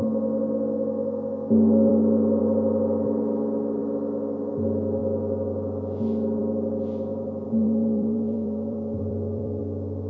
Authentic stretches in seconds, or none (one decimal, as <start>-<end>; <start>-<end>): 0.0-7.1; 9.6-10.1